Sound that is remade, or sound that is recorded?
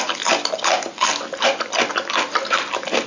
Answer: recorded